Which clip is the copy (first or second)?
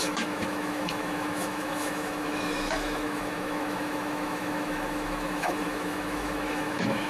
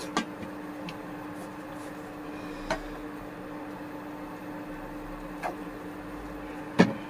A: first